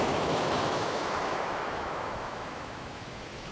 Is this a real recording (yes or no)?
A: no